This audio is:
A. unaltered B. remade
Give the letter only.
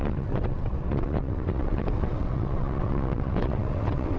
B